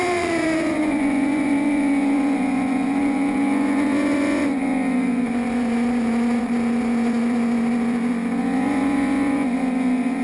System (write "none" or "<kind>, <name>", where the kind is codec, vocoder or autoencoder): vocoder, Vocos